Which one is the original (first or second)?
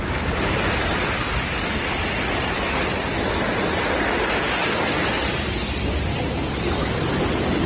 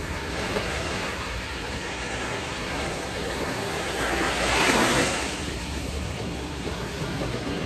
first